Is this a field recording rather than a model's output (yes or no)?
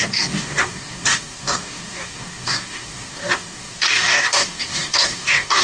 no